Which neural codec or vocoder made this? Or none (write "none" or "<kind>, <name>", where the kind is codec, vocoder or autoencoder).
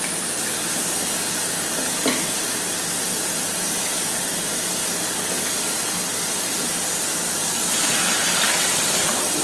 none